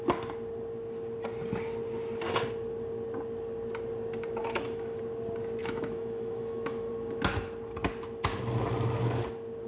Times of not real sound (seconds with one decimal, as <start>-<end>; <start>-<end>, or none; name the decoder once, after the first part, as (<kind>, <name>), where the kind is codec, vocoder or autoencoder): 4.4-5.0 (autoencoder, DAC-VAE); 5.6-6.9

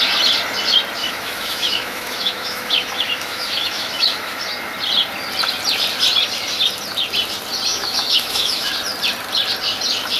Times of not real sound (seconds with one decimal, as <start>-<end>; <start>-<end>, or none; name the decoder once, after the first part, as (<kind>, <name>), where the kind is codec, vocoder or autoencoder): 1.0-4.4 (autoencoder, DAC-VAE); 7.7-8.7

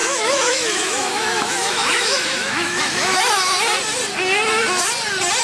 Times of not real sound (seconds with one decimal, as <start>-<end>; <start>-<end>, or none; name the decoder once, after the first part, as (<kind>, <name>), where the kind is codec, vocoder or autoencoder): 0.0-3.2 (autoencoder, DAC-VAE)

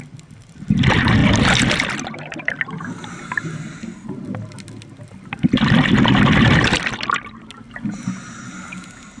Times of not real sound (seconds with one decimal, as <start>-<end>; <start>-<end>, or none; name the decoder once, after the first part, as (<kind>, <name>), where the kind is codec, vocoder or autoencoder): none